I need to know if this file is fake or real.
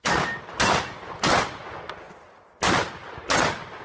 real